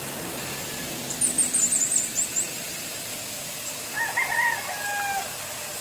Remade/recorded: recorded